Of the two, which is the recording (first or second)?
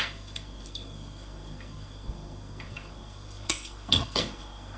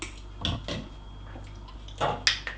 second